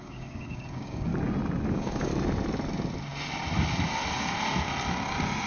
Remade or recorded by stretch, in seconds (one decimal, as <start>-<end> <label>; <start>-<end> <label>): 0.0-1.1 remade; 1.1-1.7 recorded; 1.7-2.1 remade; 2.1-5.5 recorded